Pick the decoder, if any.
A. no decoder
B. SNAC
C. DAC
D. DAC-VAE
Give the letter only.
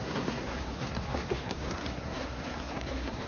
B